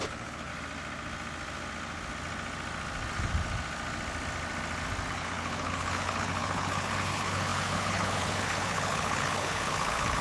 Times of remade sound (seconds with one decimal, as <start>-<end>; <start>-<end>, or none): 0.0-0.5; 5.1-10.2